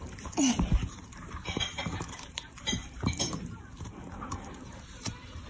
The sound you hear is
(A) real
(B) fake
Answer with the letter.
B